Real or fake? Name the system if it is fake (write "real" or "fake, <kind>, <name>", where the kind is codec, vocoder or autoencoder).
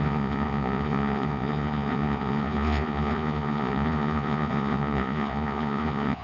fake, vocoder, Vocos